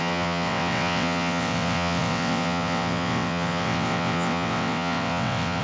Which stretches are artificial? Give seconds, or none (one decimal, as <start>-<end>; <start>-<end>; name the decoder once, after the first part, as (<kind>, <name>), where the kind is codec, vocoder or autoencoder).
0.0-5.6 (vocoder, WaveNeXt)